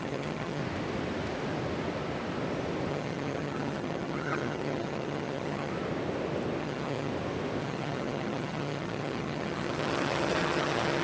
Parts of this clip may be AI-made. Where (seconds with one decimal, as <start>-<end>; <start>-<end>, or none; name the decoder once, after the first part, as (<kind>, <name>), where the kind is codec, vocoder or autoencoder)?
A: 0.0-0.6 (vocoder, HiFi-GAN); 2.9-5.7; 6.6-7.1; 7.6-11.0